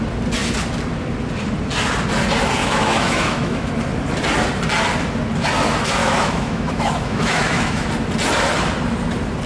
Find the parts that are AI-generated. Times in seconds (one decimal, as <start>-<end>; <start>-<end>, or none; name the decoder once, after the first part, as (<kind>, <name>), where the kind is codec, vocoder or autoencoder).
2.6-3.7 (autoencoder, DAC-VAE); 6.0-7.9